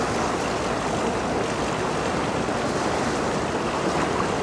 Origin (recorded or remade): recorded